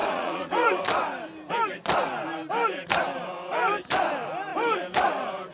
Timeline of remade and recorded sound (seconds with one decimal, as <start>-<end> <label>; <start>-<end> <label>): 0.0-0.8 remade; 0.8-5.5 recorded